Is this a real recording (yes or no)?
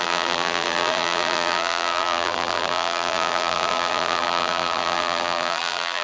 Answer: no